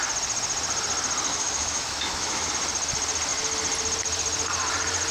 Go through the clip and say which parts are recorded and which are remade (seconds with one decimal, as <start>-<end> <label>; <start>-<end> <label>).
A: 0.0-1.3 recorded; 1.3-2.5 remade; 2.5-5.1 recorded